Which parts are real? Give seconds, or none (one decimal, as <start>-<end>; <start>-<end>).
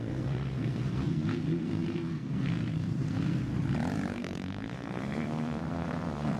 3.5-4.1